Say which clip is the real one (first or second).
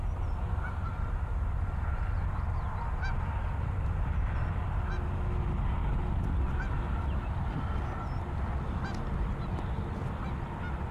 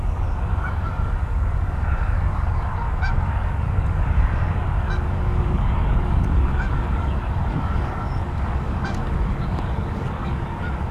first